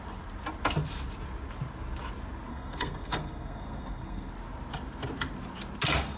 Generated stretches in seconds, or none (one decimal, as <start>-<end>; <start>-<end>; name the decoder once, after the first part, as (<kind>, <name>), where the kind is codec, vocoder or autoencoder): 2.5-4.3 (codec, SNAC)